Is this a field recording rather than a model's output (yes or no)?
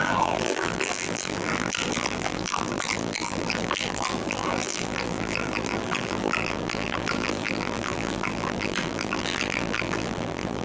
no